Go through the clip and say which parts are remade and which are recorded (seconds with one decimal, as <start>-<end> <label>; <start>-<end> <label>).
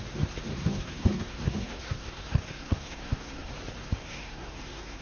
0.0-0.5 recorded; 0.5-3.5 remade; 3.5-4.0 recorded; 4.0-5.0 remade